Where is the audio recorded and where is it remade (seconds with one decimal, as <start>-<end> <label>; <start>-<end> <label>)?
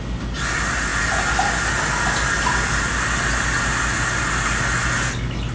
0.0-5.5 recorded